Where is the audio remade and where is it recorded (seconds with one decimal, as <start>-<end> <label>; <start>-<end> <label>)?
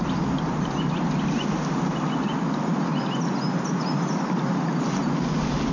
0.0-5.7 recorded